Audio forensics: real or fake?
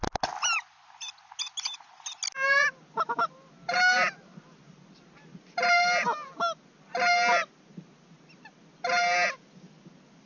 real